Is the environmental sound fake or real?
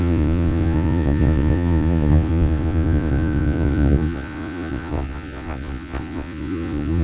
fake